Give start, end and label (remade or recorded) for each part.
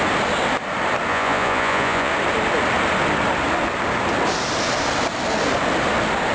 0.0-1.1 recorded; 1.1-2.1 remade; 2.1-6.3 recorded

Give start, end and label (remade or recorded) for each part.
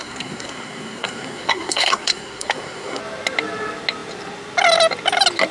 0.0-3.0 remade; 3.0-5.5 recorded